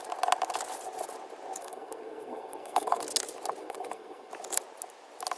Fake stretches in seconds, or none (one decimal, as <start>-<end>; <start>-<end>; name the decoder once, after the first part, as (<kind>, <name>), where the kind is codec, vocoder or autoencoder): 1.6-3.0 (codec, SNAC); 3.6-4.3